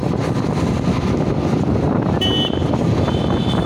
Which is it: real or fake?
real